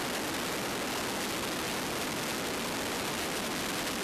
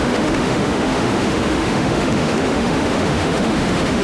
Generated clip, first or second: second